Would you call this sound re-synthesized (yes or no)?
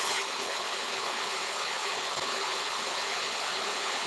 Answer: yes